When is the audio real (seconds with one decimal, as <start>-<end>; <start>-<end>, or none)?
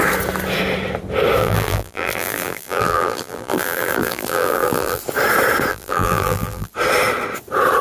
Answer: 0.0-1.4; 5.0-5.7; 6.7-7.8